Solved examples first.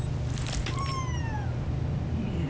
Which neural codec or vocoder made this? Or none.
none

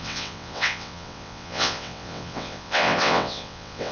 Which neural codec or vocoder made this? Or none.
vocoder, WaveNeXt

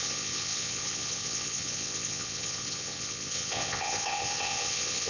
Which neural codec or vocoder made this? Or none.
vocoder, WaveNeXt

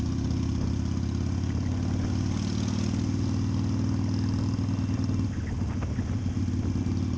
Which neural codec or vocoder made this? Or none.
none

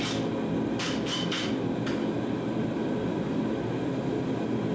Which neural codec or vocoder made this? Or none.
none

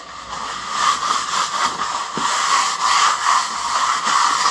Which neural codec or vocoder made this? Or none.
none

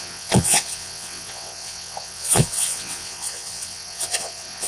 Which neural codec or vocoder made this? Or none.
vocoder, WaveNeXt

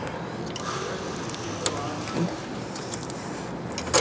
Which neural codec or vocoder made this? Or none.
none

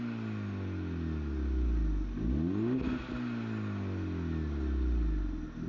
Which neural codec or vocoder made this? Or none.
none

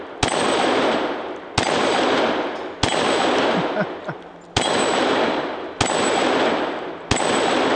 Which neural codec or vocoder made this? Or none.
none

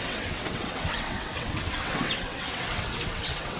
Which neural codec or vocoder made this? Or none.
vocoder, WaveNeXt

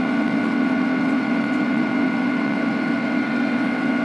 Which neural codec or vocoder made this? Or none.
vocoder, WaveNeXt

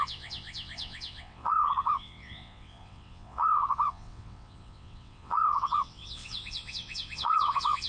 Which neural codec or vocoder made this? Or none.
vocoder, WaveNeXt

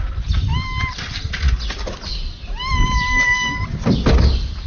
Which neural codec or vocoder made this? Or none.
none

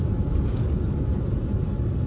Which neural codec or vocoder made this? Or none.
none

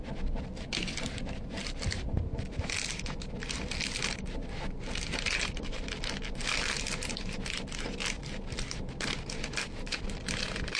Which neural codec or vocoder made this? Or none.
none